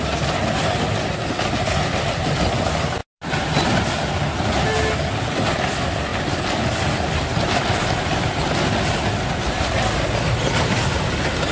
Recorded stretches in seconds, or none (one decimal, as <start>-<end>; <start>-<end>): 0.0-11.5